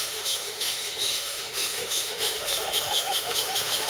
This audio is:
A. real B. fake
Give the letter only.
B